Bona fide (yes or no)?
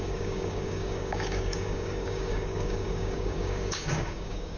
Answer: no